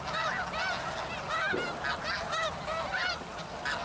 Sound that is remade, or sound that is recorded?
recorded